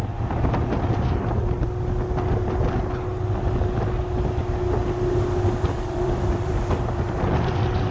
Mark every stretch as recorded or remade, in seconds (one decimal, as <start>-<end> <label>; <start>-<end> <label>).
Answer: 0.0-4.8 recorded; 4.8-7.9 remade